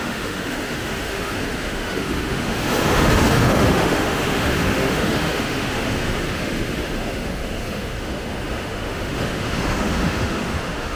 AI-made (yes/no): yes